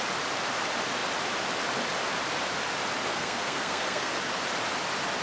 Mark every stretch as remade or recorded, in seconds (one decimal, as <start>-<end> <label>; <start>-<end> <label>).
0.0-3.1 recorded; 3.1-4.1 remade; 4.1-5.2 recorded